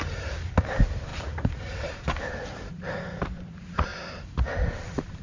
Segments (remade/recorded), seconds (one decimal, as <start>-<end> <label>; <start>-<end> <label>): 0.0-3.9 remade; 3.9-5.2 recorded